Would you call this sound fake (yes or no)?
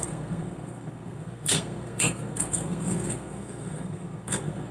yes